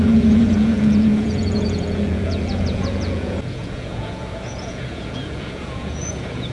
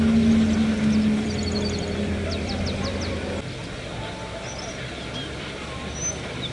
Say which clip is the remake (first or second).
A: first